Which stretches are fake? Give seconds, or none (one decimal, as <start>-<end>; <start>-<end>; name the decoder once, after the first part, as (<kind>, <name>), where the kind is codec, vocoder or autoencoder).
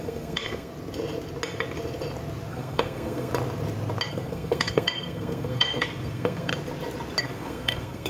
0.0-0.7 (codec, SNAC); 2.5-3.3; 4.1-6.5; 7.2-8.1